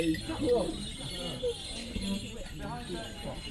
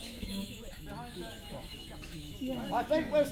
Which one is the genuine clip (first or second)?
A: first